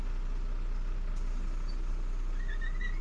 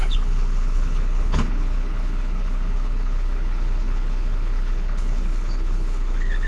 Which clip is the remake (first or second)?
second